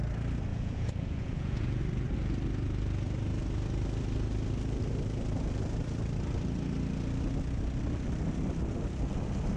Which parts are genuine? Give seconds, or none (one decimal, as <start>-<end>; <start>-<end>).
0.0-0.5; 1.8-9.6